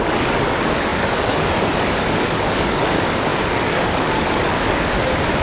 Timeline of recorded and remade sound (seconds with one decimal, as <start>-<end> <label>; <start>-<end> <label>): 0.0-5.4 remade